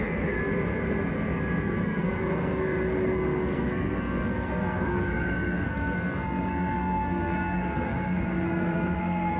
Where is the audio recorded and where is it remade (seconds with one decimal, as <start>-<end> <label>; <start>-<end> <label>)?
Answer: 0.0-0.4 remade; 0.4-1.6 recorded; 1.6-9.4 remade